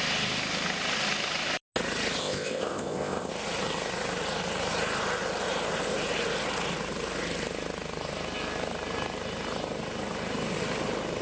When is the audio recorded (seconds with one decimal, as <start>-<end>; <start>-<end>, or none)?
0.0-2.2; 3.3-11.2